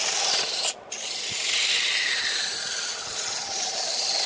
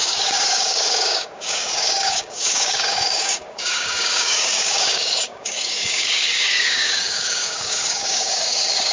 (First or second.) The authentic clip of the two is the first